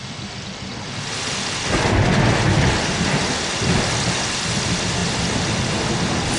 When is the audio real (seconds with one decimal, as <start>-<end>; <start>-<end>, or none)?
0.0-6.4